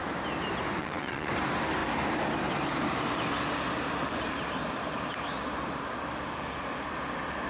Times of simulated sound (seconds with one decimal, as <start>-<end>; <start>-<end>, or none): 0.8-1.3